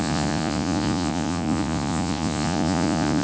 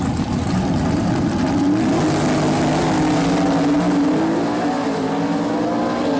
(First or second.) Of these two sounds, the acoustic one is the second